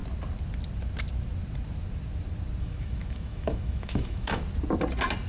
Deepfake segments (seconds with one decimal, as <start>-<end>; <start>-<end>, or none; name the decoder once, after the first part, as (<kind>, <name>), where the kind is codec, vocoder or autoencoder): 2.6-4.4 (autoencoder, DAC-VAE)